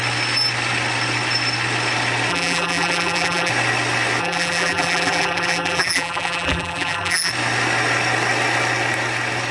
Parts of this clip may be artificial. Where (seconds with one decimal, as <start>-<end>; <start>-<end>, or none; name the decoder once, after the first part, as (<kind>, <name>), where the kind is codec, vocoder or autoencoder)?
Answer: 2.3-3.5 (vocoder, BigVGAN v2); 4.2-7.3